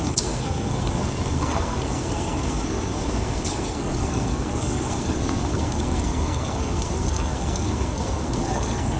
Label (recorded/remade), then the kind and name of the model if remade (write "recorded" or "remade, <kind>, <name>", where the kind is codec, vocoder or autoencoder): remade, codec, SNAC